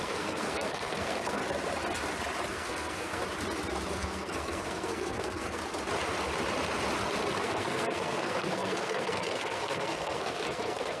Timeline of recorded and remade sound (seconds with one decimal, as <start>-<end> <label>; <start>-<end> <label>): 0.0-1.4 remade; 1.4-2.5 recorded; 2.5-3.2 remade; 3.2-3.9 recorded; 3.9-5.6 remade; 5.6-7.4 recorded; 7.4-11.0 remade